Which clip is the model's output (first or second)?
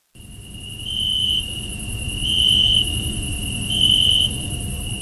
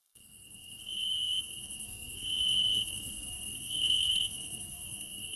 second